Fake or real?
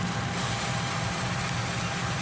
real